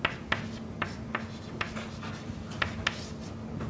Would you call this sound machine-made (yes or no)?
no